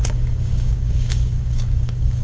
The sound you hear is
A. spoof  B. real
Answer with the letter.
A